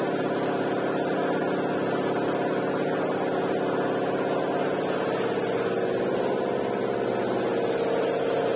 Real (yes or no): yes